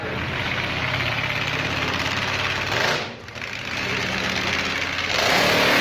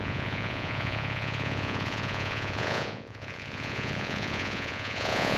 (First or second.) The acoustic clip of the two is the first